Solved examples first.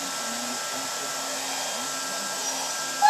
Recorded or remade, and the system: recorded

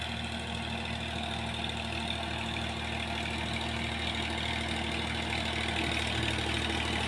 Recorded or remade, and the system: recorded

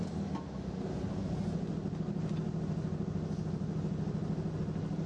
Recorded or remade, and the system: recorded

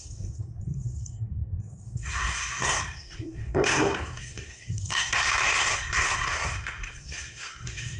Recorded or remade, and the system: remade, codec, SNAC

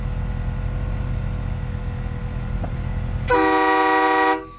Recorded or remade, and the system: recorded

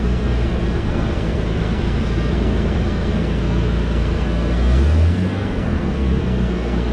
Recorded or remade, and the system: remade, codec, SNAC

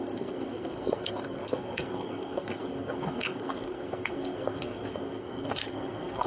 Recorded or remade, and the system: remade, codec, SNAC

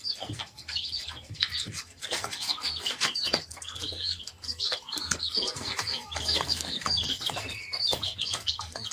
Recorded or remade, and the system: remade, codec, SNAC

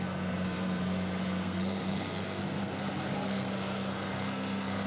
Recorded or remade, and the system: remade, codec, SNAC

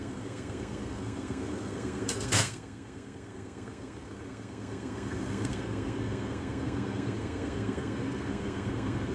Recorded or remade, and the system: remade, codec, SNAC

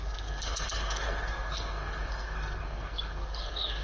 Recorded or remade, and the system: remade, codec, SNAC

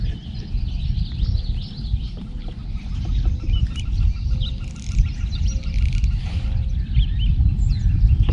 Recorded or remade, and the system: recorded